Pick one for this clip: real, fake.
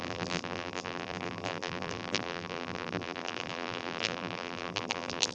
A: fake